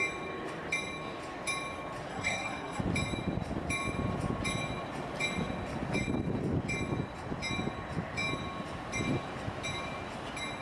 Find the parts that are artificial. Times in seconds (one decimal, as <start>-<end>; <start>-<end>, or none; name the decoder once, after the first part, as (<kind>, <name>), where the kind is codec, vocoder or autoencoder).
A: 2.1-2.8 (codec, SNAC)